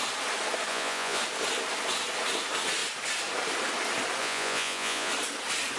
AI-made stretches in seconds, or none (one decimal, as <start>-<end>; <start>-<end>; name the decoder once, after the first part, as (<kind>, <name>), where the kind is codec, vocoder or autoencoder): 0.7-1.2 (vocoder, Vocos); 4.2-5.1